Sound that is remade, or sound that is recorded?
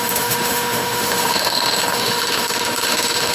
remade